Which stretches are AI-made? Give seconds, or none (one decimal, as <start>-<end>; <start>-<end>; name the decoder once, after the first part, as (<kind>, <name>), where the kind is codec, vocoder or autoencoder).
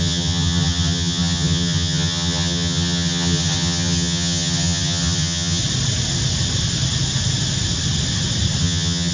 0.0-5.6 (vocoder, HiFi-GAN); 8.6-9.1